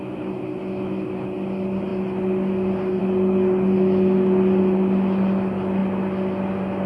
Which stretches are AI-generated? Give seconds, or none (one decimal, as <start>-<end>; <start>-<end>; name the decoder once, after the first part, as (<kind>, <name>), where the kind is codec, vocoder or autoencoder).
none